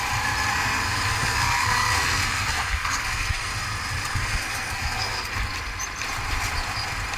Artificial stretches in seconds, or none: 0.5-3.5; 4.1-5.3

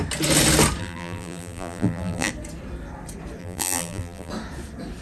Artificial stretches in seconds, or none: 0.8-2.3; 3.4-4.3

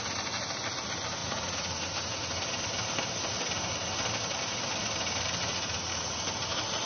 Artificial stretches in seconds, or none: 1.2-1.8; 5.5-6.2

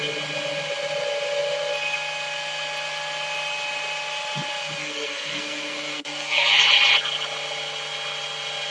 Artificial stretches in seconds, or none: 4.8-6.6